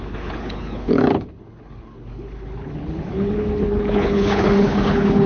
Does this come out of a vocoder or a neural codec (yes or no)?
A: yes